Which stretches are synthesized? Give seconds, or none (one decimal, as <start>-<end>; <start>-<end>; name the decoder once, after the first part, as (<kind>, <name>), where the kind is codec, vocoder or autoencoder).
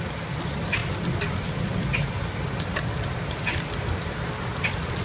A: none